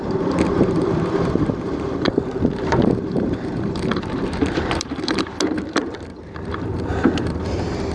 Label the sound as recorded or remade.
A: remade